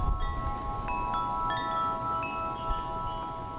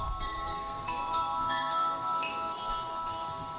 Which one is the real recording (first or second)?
first